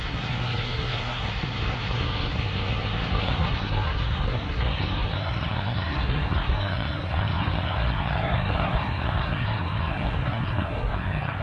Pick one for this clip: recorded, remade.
remade